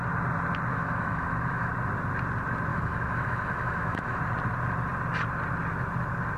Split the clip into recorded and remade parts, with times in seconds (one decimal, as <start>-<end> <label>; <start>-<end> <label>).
0.0-0.7 recorded; 0.7-1.7 remade; 1.7-2.7 recorded; 2.7-4.2 remade; 4.2-6.4 recorded